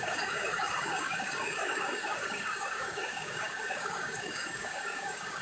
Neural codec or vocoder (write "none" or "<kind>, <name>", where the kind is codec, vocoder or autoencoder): codec, DAC